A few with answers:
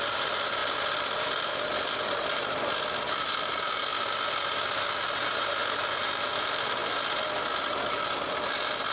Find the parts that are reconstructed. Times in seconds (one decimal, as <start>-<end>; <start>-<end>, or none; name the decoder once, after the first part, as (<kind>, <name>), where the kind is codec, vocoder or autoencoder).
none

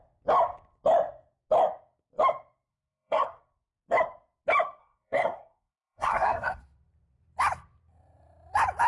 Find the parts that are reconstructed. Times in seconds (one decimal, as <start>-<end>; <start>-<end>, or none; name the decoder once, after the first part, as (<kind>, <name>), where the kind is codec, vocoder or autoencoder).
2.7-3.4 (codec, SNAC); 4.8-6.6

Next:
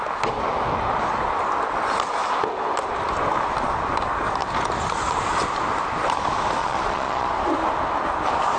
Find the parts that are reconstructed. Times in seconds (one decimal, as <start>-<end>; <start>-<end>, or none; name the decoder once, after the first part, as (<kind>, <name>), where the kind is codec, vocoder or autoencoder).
6.6-7.3 (vocoder, Vocos)

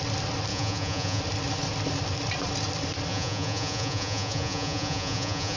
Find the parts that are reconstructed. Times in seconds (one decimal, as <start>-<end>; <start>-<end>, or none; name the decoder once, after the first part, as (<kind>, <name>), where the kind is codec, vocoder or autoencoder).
0.5-1.2 (vocoder, Vocos); 3.1-5.6

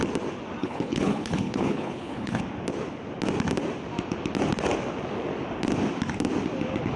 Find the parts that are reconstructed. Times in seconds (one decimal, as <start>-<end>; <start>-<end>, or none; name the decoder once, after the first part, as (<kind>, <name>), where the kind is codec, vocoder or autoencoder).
0.6-2.4 (codec, HILCodec)

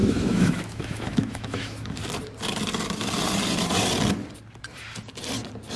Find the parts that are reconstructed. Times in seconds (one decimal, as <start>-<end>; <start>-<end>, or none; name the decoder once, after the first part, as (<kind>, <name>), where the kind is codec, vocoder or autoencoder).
0.0-2.0 (autoencoder, DAC-VAE)

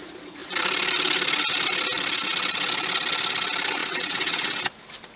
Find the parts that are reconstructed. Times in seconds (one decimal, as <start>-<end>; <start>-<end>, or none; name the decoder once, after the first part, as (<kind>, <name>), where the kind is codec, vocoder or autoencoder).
3.8-4.6 (vocoder, WaveNeXt)